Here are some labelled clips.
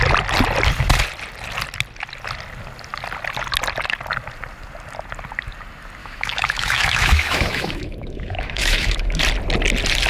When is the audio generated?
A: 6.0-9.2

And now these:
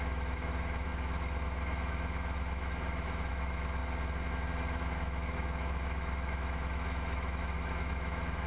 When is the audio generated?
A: 0.0-3.8; 4.3-8.5

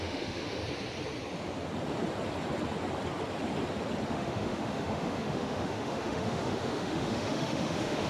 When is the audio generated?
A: 0.0-0.6; 4.1-8.1

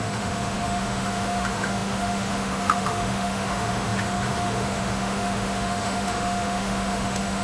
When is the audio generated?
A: 0.0-7.4

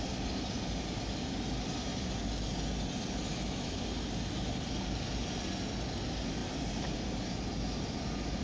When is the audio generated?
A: 3.3-3.8

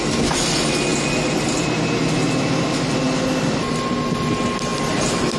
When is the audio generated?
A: none

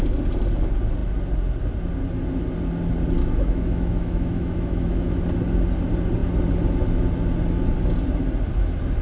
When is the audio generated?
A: 3.2-5.2

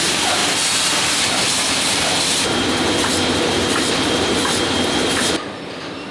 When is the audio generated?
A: none